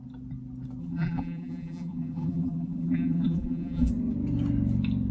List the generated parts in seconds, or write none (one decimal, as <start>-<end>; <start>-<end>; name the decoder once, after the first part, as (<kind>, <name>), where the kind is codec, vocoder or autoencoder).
0.8-3.9 (vocoder, BigVGAN v2)